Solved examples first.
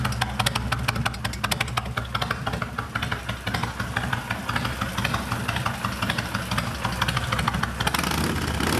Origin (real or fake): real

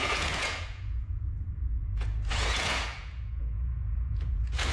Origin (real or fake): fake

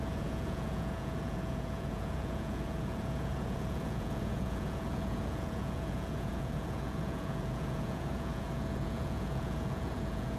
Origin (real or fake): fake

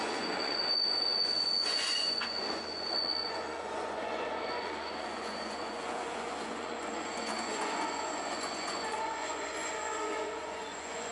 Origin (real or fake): fake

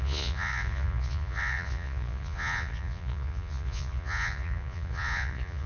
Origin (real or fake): fake